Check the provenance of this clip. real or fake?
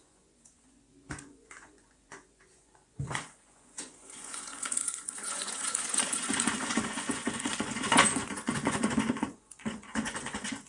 fake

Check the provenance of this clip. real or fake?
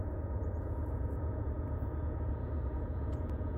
fake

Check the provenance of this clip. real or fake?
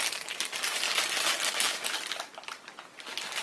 real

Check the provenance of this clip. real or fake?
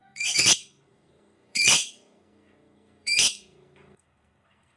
fake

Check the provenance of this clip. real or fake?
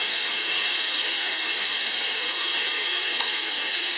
fake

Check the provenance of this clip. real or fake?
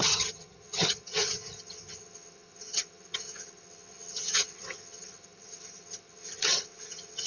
fake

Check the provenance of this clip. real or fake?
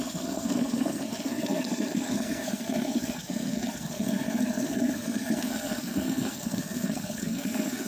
fake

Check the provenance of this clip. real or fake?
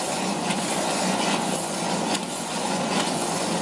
fake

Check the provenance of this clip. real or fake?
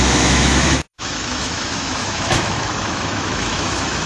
fake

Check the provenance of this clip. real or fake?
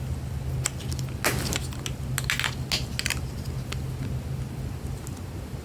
real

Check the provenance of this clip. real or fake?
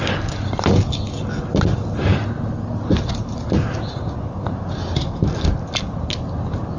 real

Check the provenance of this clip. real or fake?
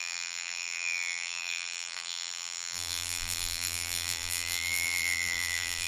fake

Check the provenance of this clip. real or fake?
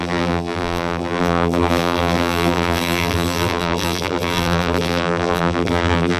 fake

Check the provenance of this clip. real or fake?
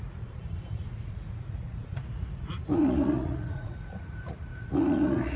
fake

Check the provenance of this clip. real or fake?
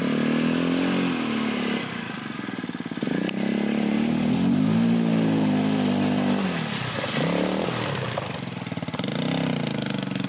real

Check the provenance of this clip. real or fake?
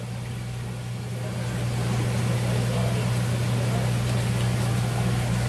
real